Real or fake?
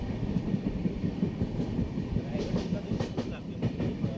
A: fake